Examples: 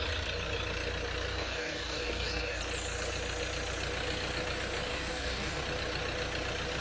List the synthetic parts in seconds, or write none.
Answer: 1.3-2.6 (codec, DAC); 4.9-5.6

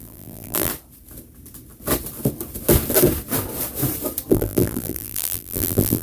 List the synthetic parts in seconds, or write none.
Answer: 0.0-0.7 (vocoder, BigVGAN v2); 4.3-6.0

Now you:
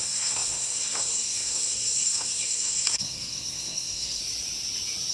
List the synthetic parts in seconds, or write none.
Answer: 0.0-4.2 (codec, SNAC)

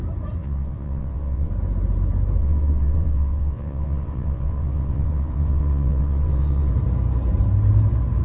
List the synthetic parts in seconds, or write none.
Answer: 0.4-1.5 (vocoder, WaveNeXt); 2.4-6.7

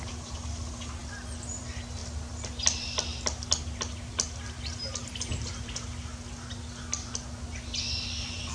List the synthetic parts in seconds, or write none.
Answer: 1.0-1.6 (vocoder, BigVGAN v2); 2.0-2.5